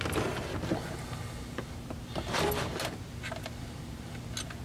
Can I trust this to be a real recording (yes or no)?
yes